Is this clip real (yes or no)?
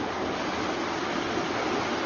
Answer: yes